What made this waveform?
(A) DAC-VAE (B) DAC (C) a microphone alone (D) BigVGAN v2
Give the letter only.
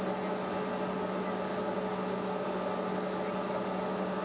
C